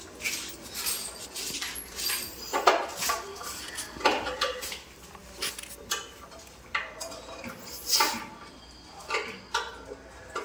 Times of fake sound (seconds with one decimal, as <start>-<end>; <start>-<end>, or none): none